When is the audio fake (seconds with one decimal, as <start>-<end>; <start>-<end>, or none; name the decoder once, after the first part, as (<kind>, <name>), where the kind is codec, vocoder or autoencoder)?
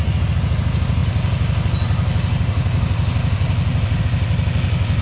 none